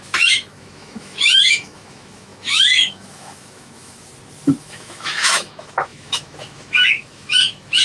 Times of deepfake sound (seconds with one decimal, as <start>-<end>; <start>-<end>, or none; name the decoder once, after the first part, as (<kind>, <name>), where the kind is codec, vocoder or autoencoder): 0.0-4.1 (autoencoder, DAC-VAE); 4.6-7.8